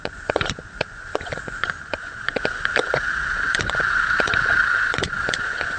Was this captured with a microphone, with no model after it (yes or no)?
no